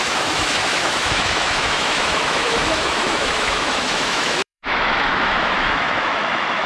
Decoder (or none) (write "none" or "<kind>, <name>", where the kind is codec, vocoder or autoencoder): autoencoder, DAC-VAE